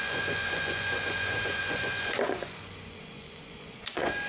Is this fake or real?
fake